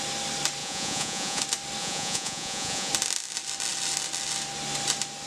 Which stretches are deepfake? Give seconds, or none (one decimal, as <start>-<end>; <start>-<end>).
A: 0.6-1.4; 1.8-2.9

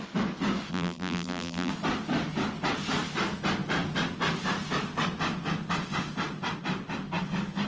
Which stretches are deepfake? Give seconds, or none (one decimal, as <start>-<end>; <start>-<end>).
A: 0.7-1.7

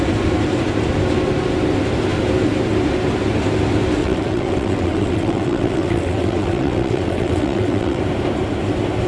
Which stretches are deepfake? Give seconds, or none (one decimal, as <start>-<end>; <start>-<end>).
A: 4.0-8.0

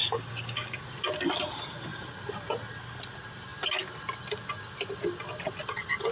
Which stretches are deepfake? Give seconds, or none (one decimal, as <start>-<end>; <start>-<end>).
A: 0.0-0.8

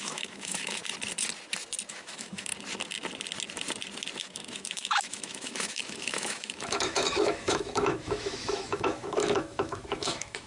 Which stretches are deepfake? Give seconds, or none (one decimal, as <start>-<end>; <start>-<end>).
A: 0.0-0.8; 1.9-2.5; 4.2-10.5

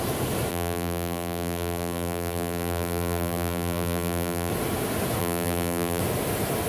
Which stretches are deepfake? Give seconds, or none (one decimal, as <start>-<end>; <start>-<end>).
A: 0.5-4.5; 5.2-6.0

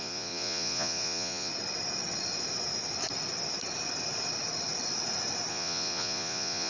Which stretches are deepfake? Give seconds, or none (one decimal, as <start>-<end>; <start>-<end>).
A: 0.0-1.5; 5.5-6.7